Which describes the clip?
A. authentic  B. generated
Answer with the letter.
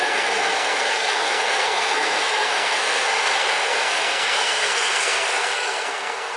B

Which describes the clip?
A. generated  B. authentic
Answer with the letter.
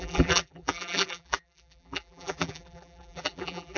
A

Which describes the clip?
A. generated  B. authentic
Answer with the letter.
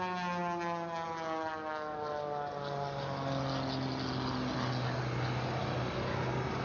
B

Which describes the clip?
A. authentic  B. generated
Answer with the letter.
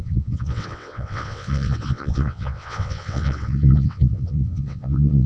B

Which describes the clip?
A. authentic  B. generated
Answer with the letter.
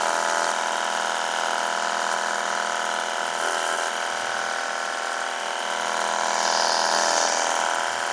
A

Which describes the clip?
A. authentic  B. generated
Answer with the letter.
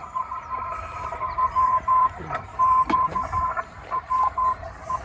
B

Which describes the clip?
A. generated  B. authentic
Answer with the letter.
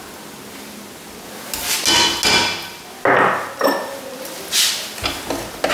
B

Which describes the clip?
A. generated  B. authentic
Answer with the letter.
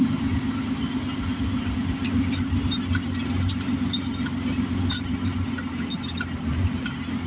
B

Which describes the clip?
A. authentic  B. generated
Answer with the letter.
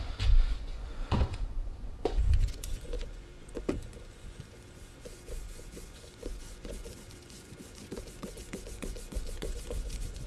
B